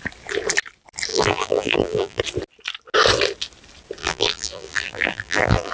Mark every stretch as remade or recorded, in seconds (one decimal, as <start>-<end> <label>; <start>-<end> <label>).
0.0-1.1 recorded; 1.1-2.2 remade; 2.2-4.0 recorded; 4.0-5.7 remade